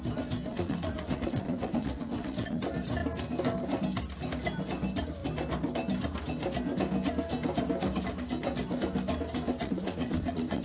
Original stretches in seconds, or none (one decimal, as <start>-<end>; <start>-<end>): 0.0-0.5; 2.6-9.6